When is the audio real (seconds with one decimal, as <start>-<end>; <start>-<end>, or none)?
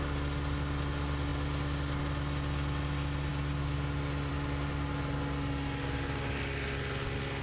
0.0-7.4